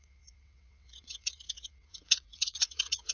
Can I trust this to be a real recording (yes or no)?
no